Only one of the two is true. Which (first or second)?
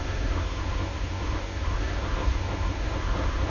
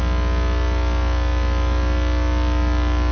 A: second